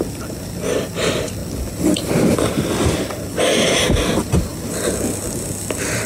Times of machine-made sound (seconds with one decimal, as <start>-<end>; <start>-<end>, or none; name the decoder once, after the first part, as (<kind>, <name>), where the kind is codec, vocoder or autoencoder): none